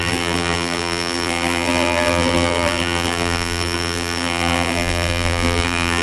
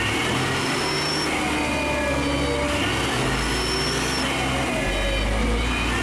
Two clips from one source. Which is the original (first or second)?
second